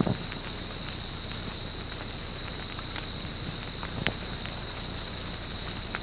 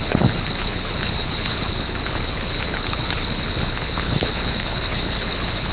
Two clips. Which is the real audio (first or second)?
first